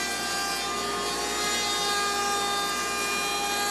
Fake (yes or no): no